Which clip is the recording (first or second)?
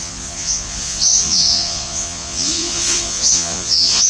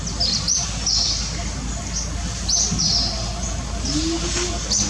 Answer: second